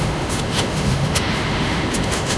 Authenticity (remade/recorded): remade